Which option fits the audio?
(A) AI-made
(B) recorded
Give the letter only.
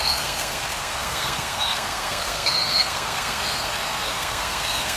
A